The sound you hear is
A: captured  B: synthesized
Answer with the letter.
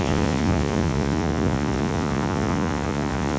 B